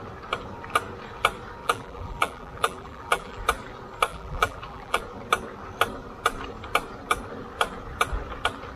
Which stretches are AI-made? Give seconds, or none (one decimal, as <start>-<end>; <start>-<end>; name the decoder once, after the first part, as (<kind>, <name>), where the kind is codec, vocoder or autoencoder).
1.6-3.4 (vocoder, BigVGAN v2); 4.1-5.0